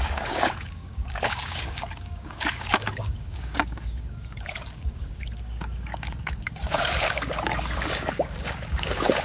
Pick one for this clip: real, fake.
fake